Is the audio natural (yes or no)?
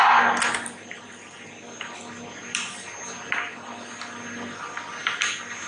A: yes